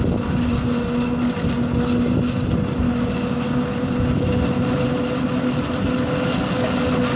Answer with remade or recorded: recorded